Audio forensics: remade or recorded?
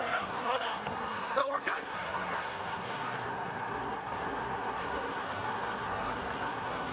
remade